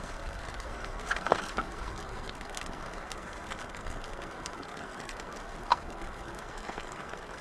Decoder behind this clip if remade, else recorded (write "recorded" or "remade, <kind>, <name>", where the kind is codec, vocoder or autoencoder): remade, codec, SNAC